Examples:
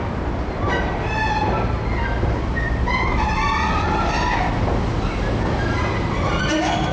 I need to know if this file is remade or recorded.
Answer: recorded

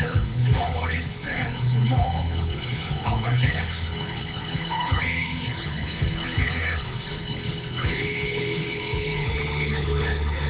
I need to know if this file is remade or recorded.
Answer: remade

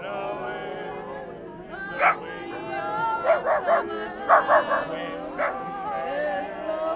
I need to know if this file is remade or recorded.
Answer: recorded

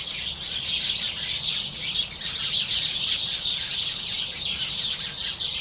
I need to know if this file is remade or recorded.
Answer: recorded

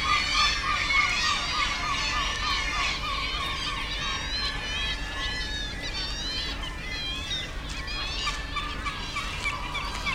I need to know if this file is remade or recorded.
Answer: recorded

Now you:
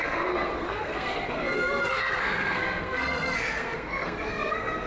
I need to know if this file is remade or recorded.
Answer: remade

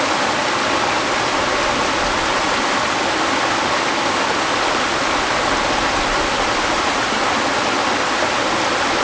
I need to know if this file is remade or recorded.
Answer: recorded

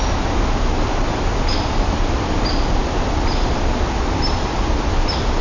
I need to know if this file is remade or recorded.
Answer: recorded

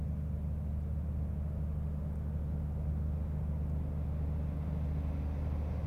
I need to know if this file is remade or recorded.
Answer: recorded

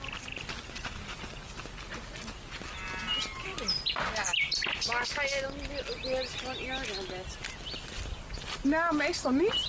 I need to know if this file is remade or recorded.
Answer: recorded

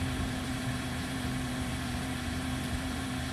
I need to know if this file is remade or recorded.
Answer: remade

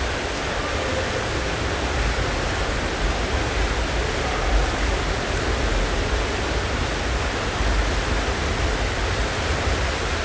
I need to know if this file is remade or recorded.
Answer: recorded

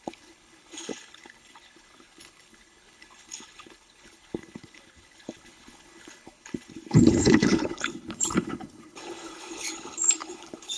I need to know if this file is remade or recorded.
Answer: remade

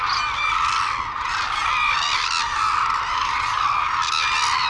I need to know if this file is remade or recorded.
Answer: recorded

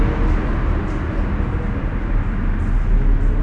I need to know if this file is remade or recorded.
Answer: recorded